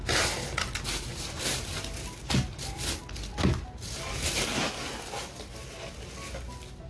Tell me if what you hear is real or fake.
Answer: real